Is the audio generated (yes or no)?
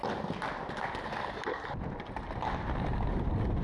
no